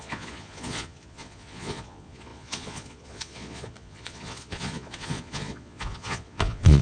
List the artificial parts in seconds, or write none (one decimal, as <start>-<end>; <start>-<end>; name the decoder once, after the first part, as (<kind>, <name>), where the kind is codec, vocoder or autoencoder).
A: 0.0-6.8 (vocoder, Vocos)